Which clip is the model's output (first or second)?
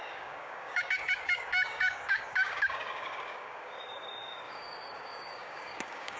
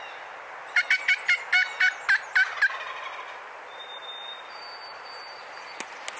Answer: first